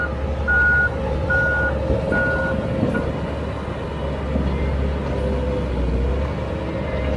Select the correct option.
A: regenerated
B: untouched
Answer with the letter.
B